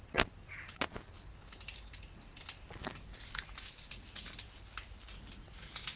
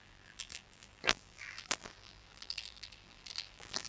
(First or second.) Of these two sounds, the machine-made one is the second